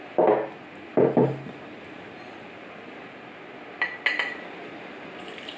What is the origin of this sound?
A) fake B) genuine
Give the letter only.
B